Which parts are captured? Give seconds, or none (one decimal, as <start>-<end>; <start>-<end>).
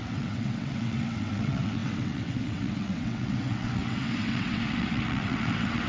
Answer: none